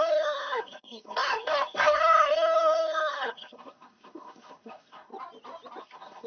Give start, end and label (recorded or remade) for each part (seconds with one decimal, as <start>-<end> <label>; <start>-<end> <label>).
0.0-5.1 remade; 5.1-5.8 recorded; 5.8-6.3 remade